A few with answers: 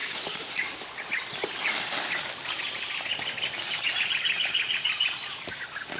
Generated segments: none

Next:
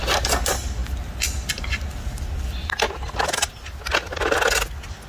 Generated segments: none